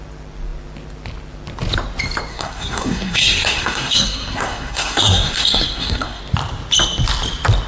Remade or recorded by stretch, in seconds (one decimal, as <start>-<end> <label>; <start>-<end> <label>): 0.0-2.3 recorded; 2.3-6.2 remade; 6.2-7.7 recorded